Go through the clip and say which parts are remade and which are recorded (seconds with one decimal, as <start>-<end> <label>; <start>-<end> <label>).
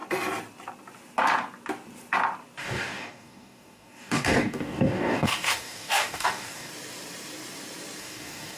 0.0-2.6 recorded; 2.6-6.7 remade; 6.7-8.0 recorded; 8.0-8.6 remade